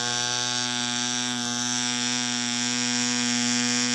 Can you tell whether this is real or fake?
real